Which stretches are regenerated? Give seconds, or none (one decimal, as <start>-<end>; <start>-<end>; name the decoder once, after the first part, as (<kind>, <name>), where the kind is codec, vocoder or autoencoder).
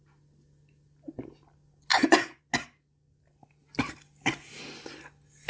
1.9-2.4 (vocoder, Vocos)